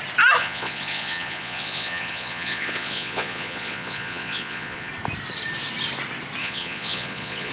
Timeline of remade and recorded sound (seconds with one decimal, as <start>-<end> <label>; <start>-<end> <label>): 0.0-0.4 recorded; 0.4-4.9 remade; 4.9-6.4 recorded; 6.4-7.5 remade